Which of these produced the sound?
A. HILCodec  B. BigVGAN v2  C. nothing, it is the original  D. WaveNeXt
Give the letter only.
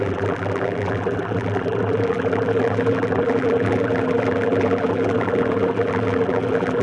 B